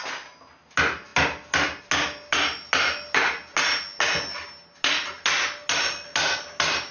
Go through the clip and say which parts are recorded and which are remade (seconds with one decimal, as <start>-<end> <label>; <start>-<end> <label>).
0.0-6.9 recorded